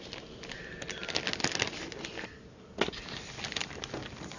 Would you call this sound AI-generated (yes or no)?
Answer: no